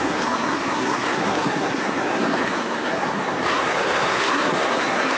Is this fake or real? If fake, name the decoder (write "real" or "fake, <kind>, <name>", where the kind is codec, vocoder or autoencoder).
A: fake, codec, SNAC